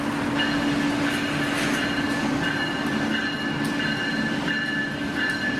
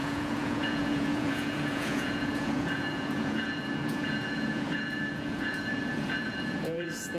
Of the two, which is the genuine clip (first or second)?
first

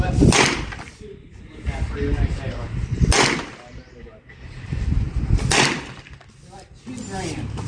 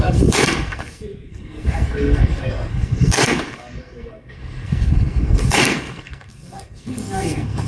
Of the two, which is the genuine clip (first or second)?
first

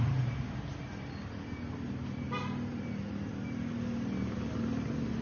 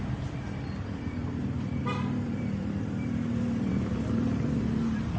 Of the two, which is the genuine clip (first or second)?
first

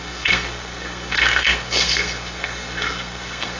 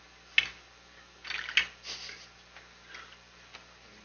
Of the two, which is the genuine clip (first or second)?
second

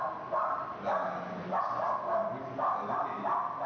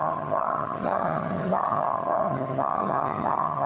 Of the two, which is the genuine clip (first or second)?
first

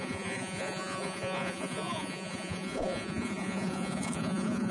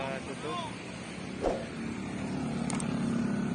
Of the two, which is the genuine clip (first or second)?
second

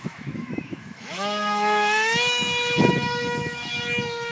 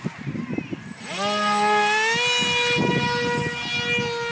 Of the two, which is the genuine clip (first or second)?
second